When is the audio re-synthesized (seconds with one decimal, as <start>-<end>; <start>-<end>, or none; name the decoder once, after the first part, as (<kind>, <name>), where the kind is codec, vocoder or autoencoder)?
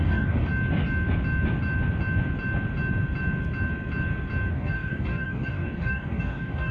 0.0-0.5 (codec, DAC); 4.5-6.7